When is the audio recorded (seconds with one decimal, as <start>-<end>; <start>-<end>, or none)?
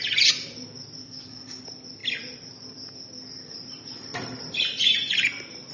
0.0-1.0; 1.6-5.7